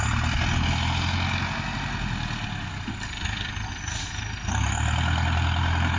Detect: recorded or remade recorded